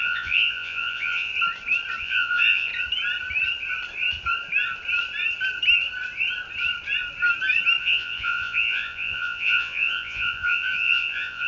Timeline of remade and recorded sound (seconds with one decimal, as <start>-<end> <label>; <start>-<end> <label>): 0.0-1.3 remade; 1.3-2.0 recorded; 2.0-2.7 remade; 2.7-7.8 recorded; 7.8-11.5 remade